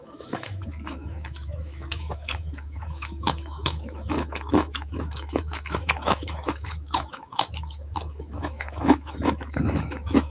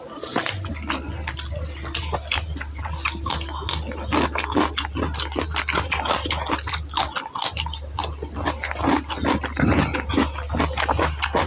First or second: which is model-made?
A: first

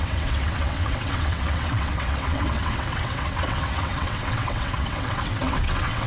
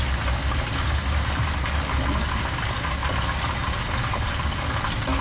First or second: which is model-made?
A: first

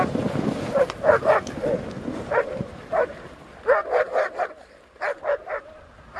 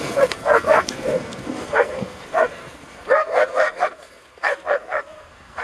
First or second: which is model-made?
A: second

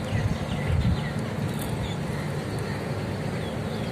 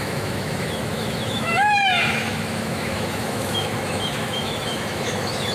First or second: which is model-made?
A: second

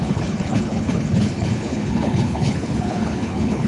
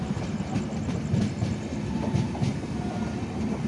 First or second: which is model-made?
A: first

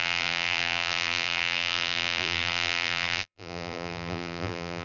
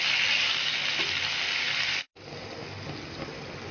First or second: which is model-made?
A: first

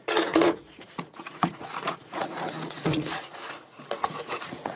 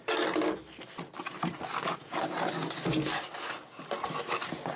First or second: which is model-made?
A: first